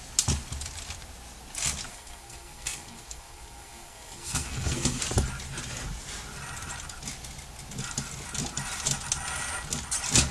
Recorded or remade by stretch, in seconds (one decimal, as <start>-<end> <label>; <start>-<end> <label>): 0.0-1.9 recorded; 1.9-5.0 remade; 5.0-10.3 recorded